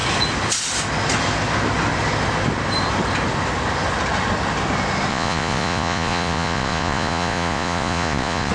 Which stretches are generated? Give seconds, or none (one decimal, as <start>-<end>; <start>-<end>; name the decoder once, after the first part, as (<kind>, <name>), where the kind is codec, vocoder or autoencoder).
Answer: 5.1-8.5 (vocoder, Vocos)